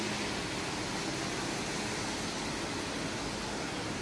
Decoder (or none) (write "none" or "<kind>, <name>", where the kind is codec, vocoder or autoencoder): none